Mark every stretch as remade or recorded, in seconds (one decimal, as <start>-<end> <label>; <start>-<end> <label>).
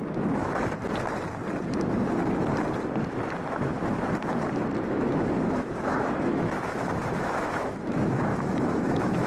0.0-0.6 remade; 0.6-4.9 recorded; 4.9-9.3 remade